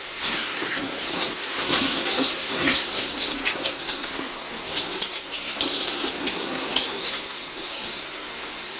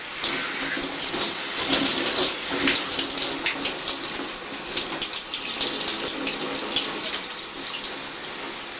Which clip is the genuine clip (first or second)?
second